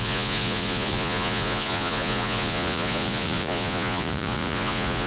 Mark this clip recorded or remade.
remade